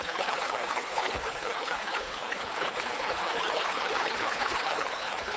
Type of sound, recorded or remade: remade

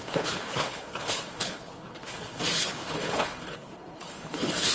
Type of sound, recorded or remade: remade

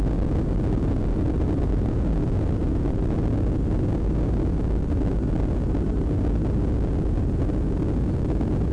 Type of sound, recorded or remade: recorded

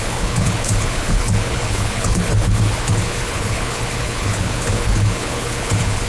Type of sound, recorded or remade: remade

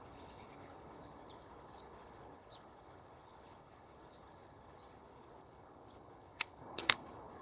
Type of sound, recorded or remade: remade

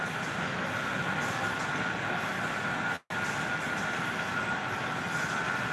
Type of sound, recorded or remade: recorded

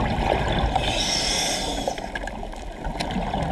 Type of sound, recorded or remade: recorded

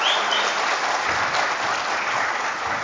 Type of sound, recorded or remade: recorded